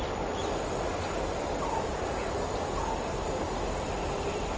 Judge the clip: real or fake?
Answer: real